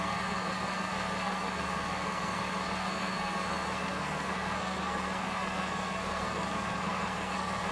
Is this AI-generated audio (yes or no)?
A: yes